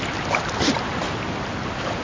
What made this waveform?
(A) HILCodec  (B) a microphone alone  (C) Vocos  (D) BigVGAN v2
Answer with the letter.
D